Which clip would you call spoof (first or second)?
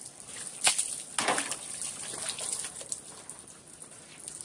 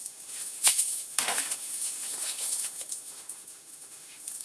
second